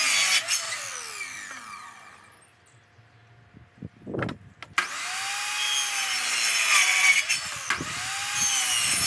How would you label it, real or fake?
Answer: real